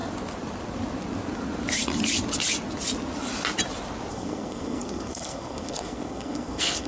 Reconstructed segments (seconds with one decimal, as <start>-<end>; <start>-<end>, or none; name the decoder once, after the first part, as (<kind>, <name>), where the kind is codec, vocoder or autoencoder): 4.1-6.9 (codec, SNAC)